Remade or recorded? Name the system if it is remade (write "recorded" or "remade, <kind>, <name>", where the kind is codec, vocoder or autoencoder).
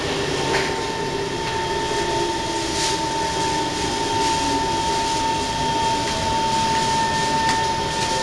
recorded